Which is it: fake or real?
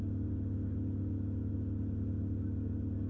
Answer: real